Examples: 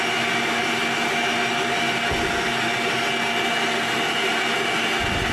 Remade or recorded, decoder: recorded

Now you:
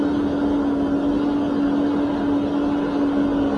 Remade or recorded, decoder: recorded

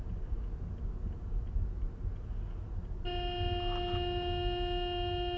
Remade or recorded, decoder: recorded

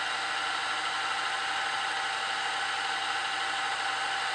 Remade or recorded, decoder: recorded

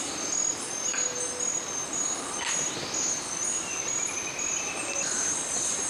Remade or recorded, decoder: recorded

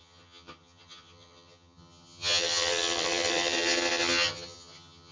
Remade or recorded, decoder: remade, vocoder, HiFi-GAN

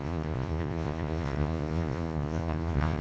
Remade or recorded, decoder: remade, vocoder, Vocos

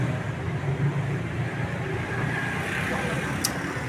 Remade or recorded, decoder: recorded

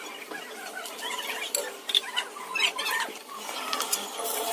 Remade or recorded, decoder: recorded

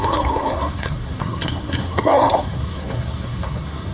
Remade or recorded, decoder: remade, codec, SNAC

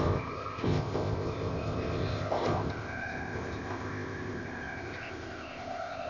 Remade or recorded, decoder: remade, codec, ZipCodec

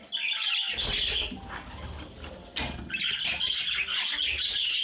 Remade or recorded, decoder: recorded